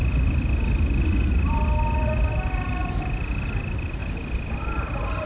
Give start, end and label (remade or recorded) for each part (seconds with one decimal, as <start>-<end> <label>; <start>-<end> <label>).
0.0-5.3 recorded